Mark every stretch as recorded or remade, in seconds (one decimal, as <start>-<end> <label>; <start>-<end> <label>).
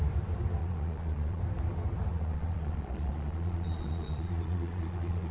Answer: 0.0-0.6 recorded; 0.6-1.4 remade; 1.4-2.1 recorded; 2.1-5.3 remade